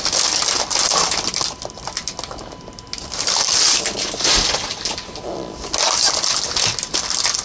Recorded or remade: recorded